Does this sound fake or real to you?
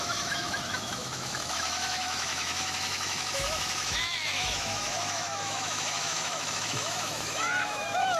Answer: fake